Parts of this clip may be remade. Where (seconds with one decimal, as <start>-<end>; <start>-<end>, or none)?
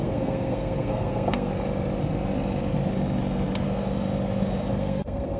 0.0-1.5; 4.7-5.4